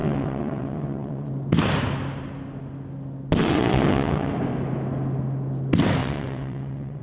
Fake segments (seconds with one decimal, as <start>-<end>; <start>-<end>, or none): 0.0-1.3; 3.4-4.3; 6.0-7.0